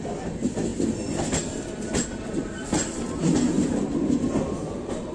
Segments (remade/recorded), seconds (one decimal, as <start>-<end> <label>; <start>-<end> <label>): 0.0-5.1 recorded